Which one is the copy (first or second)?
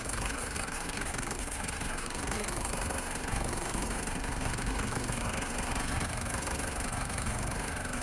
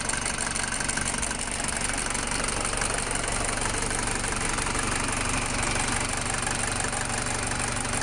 first